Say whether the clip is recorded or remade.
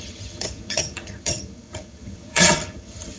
remade